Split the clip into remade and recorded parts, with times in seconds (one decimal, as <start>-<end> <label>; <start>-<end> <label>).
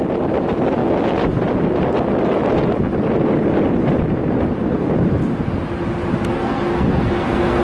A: 0.0-6.3 recorded; 6.3-7.6 remade